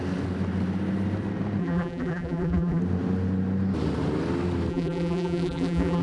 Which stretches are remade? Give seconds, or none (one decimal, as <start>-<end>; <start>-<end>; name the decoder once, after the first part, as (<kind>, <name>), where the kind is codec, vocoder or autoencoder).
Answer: 1.6-2.8 (vocoder, BigVGAN v2); 4.7-6.0